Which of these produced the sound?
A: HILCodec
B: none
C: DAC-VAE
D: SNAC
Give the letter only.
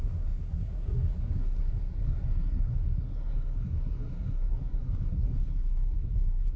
D